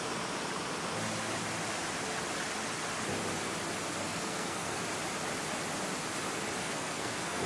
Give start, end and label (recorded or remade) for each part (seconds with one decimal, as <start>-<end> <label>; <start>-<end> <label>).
0.0-4.0 recorded; 4.0-4.8 remade; 4.8-6.6 recorded; 6.6-7.5 remade